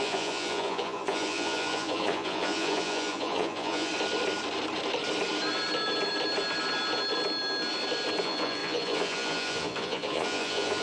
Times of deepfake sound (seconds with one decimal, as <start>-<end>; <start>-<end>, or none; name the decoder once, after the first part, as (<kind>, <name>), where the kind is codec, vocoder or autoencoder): 0.0-3.9 (vocoder, Vocos); 8.2-10.8